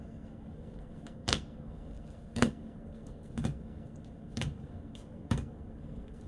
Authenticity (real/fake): fake